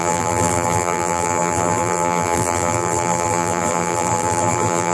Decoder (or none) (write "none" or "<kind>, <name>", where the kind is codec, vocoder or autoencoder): vocoder, BigVGAN v2